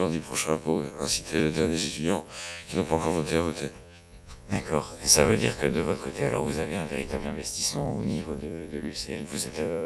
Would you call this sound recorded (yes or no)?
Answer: no